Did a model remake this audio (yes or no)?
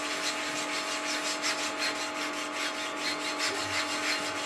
no